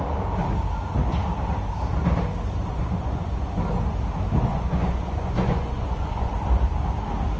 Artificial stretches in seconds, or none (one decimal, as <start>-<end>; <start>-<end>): 2.7-3.5; 4.5-6.3